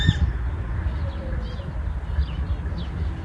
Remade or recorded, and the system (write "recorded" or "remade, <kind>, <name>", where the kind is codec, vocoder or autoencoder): recorded